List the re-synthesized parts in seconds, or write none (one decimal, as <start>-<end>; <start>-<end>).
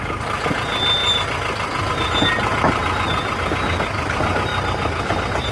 4.5-5.5